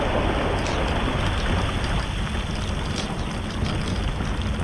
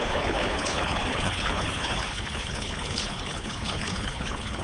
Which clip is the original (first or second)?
first